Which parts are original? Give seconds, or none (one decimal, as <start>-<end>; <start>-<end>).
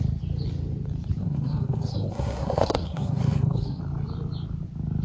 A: 0.0-1.2; 3.8-5.0